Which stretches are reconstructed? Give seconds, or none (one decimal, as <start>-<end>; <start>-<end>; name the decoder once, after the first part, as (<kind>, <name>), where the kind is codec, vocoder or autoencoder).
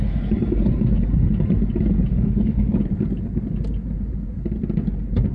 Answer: 2.1-2.7 (autoencoder, DAC-VAE)